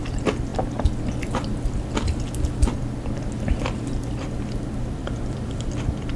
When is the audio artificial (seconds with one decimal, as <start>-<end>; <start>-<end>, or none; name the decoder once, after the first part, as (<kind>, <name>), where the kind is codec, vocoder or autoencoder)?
5.0-5.7 (vocoder, BigVGAN v2)